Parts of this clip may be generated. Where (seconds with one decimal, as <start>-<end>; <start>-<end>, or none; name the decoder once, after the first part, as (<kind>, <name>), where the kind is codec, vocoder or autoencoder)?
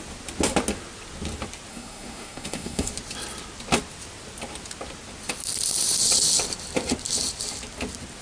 1.7-2.9 (codec, SNAC)